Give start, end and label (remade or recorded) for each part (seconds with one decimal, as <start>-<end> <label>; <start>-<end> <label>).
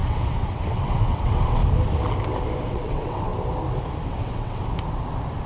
0.0-1.6 remade; 1.6-2.6 recorded; 2.6-3.3 remade; 3.3-4.1 recorded; 4.1-4.6 remade; 4.6-5.5 recorded